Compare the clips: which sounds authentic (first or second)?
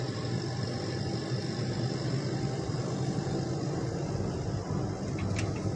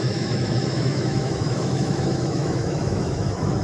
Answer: first